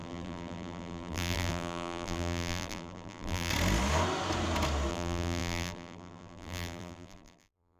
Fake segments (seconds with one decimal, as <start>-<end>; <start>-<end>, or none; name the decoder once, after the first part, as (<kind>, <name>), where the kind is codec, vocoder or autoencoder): 0.0-3.5 (vocoder, BigVGAN v2); 4.9-7.8